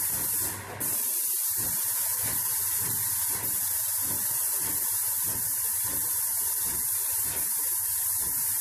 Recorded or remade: remade